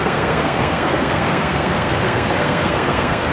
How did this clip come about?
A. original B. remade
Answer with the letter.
B